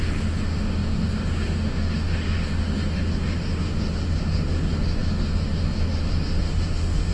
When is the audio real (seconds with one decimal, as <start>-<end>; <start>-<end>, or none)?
none